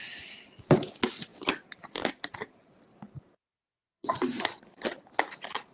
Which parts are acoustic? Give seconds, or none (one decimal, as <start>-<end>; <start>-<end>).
0.0-3.7; 4.6-5.7